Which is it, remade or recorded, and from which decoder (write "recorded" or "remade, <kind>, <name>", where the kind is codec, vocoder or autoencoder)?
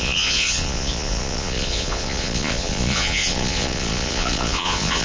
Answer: remade, vocoder, Vocos